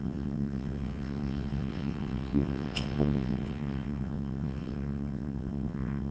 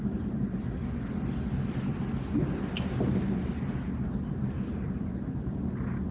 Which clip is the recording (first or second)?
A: second